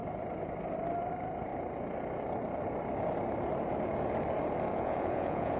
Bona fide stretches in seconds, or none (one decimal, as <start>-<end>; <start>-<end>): 0.0-4.7